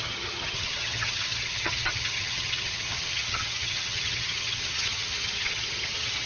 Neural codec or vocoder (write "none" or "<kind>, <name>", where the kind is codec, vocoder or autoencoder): vocoder, HiFi-GAN